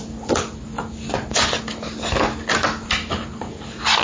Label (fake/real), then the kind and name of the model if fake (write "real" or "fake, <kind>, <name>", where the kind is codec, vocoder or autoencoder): real